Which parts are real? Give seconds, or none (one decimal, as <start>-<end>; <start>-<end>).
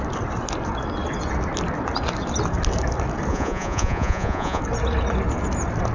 0.0-3.3; 4.6-5.9